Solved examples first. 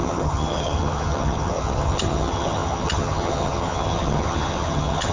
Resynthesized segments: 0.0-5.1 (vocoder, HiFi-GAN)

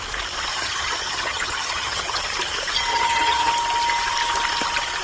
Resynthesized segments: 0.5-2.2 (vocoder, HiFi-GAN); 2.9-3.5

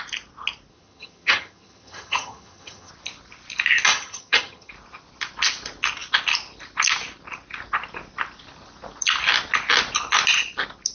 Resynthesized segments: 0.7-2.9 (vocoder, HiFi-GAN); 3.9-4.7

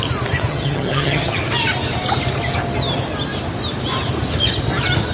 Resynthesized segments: 0.5-1.4 (vocoder, HiFi-GAN)

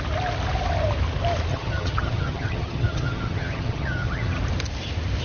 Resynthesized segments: 1.5-4.4 (vocoder, HiFi-GAN)

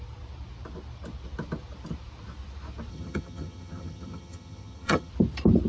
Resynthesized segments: 2.9-5.1 (vocoder, HiFi-GAN)